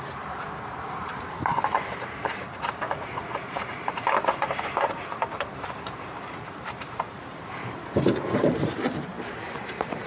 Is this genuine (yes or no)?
no